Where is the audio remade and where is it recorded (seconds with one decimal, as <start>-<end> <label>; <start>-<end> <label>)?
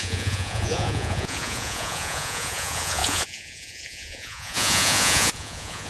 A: 0.0-5.9 remade